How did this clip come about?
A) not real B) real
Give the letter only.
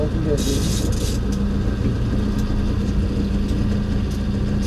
B